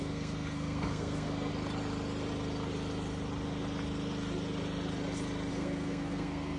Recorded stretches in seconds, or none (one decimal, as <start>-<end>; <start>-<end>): 1.5-5.5